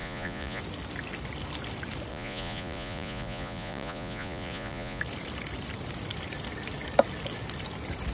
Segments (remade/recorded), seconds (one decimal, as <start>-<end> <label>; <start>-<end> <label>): 0.0-0.6 remade; 0.6-2.1 recorded; 2.1-5.0 remade; 5.0-8.1 recorded